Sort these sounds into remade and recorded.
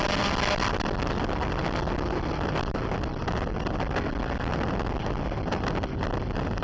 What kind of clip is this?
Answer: recorded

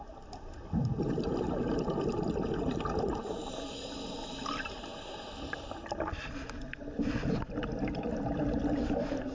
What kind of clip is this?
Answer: recorded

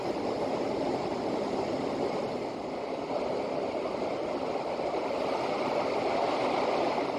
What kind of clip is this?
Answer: recorded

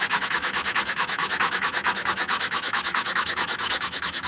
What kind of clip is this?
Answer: remade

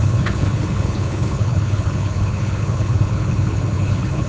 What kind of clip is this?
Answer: remade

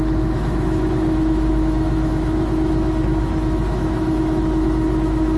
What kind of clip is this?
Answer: remade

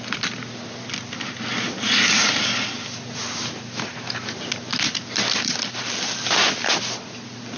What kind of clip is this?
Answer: recorded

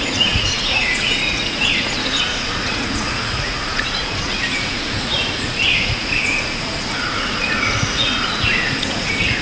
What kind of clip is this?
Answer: remade